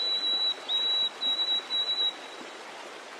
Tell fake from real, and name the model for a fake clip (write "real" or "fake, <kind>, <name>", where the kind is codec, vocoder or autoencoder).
real